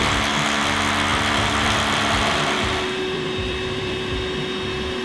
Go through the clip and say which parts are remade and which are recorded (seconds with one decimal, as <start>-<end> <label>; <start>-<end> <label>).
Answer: 0.0-1.1 recorded; 1.1-4.1 remade; 4.1-5.0 recorded